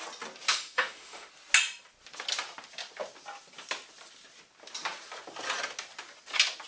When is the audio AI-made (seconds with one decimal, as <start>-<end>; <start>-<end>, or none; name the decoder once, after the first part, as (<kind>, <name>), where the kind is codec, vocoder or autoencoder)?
0.5-1.3 (autoencoder, DAC-VAE)